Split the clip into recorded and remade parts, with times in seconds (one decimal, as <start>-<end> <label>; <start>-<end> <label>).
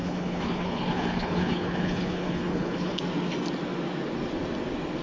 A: 0.0-3.0 remade; 3.0-5.0 recorded